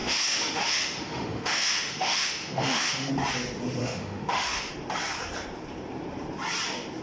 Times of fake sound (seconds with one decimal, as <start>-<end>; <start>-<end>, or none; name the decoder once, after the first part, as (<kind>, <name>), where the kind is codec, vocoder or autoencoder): 0.0-3.1 (autoencoder, DAC-VAE); 3.8-4.7

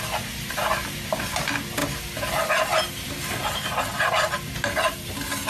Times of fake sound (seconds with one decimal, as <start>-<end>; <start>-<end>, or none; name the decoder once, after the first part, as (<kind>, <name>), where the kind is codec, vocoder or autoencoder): none

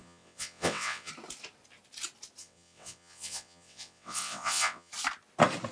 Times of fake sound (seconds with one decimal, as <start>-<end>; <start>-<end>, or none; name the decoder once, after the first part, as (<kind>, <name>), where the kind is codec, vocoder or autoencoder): 0.0-1.1 (vocoder, WaveNeXt); 2.4-4.9